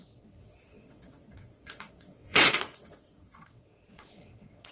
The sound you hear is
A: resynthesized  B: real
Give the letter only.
A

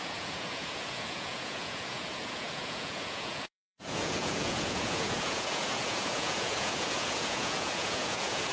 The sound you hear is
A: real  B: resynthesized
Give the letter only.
B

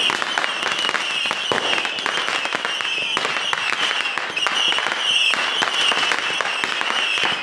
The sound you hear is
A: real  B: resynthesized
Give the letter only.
A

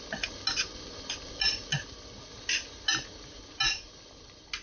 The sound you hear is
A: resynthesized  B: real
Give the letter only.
B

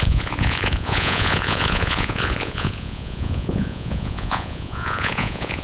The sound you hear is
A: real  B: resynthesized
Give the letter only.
B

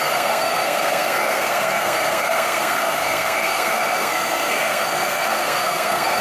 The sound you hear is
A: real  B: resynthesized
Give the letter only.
B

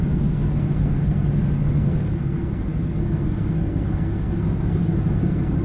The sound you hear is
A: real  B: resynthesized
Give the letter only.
B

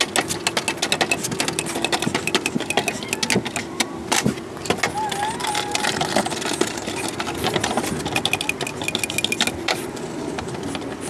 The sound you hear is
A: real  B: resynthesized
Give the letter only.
A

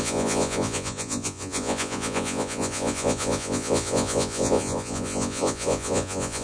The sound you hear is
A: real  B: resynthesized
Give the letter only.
B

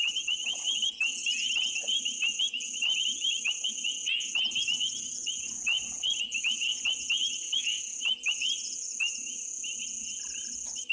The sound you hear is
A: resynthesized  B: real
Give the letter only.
A